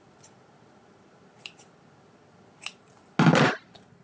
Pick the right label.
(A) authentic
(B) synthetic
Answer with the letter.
A